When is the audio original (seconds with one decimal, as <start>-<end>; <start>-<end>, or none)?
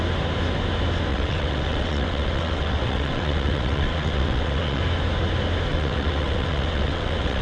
0.0-1.1; 4.8-5.7